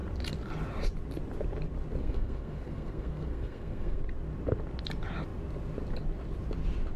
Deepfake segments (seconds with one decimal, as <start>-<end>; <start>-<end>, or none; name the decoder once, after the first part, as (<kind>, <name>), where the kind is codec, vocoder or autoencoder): 2.0-4.0 (codec, SNAC)